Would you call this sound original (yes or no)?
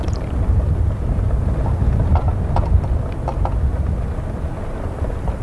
no